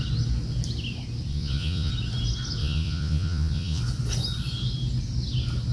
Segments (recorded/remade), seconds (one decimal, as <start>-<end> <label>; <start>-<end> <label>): 0.0-1.3 recorded; 1.3-1.9 remade; 1.9-2.6 recorded; 2.6-3.8 remade; 3.8-5.7 recorded